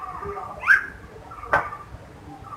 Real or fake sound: real